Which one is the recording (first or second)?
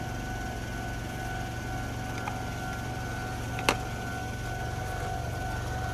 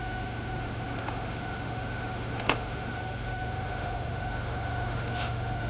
first